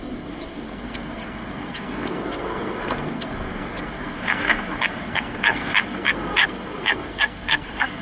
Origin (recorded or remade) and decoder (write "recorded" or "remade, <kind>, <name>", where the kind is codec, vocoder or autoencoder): remade, codec, SNAC